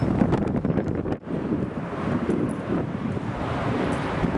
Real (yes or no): no